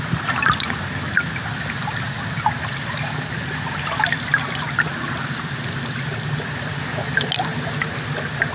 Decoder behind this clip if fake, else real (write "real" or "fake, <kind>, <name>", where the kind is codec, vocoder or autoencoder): real